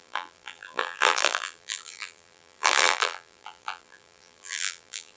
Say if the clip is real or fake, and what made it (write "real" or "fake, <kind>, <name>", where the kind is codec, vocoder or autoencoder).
fake, vocoder, BigVGAN v2